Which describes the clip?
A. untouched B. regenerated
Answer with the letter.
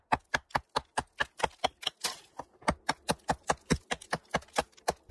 A